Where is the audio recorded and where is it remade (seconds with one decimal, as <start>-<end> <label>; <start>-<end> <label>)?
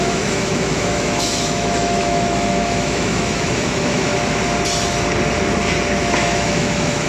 0.0-4.1 remade; 4.1-6.0 recorded; 6.0-7.1 remade